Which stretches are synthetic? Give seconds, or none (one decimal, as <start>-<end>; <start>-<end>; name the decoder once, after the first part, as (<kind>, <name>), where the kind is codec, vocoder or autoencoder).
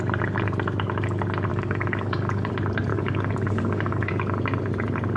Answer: 1.5-2.5 (codec, DAC); 2.9-4.1